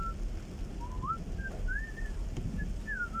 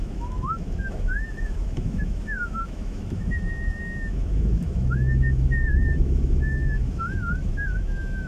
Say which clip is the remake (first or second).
second